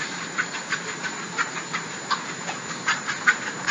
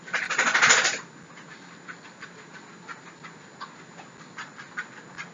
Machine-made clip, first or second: first